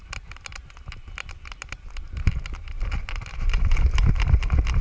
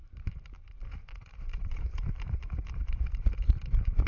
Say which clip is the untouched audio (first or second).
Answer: first